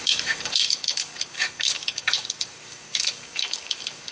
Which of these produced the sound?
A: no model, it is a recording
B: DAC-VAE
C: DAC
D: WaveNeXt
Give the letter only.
C